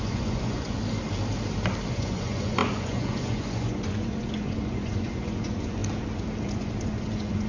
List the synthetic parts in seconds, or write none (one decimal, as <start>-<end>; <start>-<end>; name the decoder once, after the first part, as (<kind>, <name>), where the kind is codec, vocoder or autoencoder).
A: 0.0-0.8 (vocoder, Vocos); 1.9-5.8; 6.4-7.5